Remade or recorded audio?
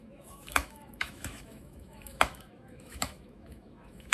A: remade